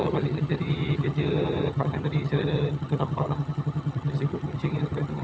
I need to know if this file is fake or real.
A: fake